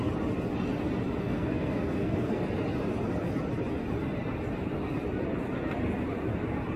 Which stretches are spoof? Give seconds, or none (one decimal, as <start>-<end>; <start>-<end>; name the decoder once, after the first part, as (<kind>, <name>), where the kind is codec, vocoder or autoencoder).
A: 1.2-2.4 (codec, SNAC)